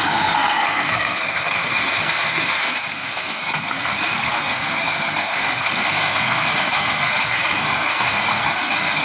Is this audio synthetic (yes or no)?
yes